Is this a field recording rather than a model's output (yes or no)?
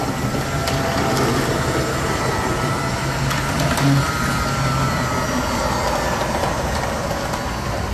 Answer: no